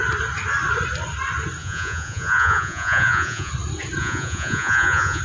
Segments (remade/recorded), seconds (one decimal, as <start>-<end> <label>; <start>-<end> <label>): 0.0-1.6 recorded; 1.6-3.5 remade; 3.5-4.0 recorded; 4.0-5.2 remade